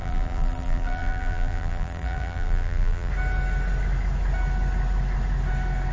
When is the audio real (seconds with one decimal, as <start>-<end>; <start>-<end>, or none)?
3.1-5.9